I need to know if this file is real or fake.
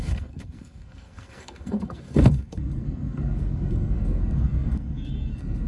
fake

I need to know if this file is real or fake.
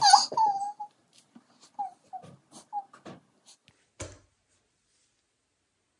real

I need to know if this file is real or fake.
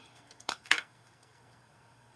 fake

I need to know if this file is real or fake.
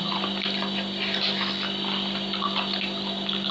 real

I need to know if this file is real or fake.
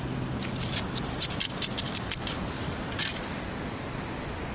real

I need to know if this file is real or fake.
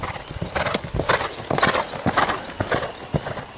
real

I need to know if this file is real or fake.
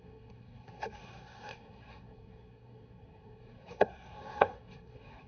fake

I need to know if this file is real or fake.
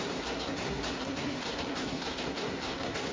fake